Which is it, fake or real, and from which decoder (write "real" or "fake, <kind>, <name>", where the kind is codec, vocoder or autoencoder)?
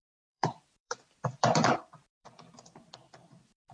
fake, vocoder, BigVGAN v2